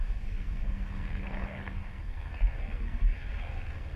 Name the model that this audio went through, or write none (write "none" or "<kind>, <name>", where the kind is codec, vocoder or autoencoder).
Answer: codec, SNAC